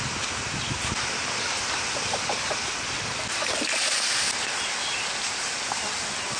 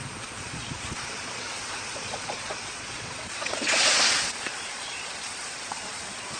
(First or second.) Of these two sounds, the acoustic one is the first